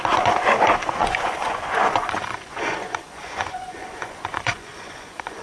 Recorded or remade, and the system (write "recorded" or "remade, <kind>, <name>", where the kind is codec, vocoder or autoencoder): remade, vocoder, Vocos